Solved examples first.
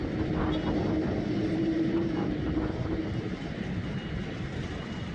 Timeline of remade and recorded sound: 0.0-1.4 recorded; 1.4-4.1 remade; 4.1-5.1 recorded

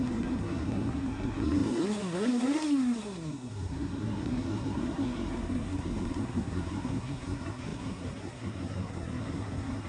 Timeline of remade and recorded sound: 0.0-9.9 remade

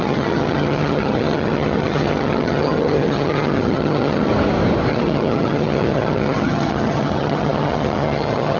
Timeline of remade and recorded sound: 0.0-4.3 remade; 4.3-4.9 recorded; 4.9-8.6 remade

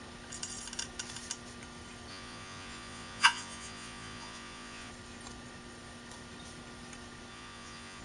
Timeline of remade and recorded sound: 0.0-2.1 recorded; 2.1-4.9 remade; 4.9-7.3 recorded; 7.3-8.0 remade

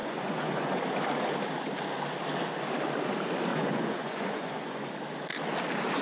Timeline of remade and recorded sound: 0.0-0.8 remade; 0.8-3.5 recorded; 3.5-4.9 remade; 4.9-6.0 recorded

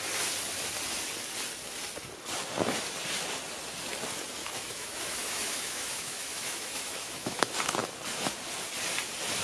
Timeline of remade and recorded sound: 0.0-4.4 recorded; 4.4-7.5 remade; 7.5-9.4 recorded